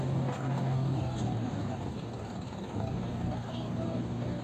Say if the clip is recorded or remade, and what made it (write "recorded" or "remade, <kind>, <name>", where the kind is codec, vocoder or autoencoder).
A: remade, codec, DAC